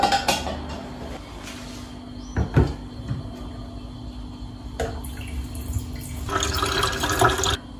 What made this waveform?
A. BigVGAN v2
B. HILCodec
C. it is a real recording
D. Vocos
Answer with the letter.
C